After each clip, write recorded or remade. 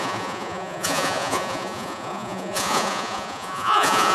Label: remade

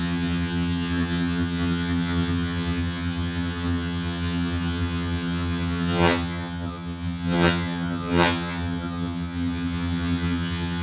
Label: remade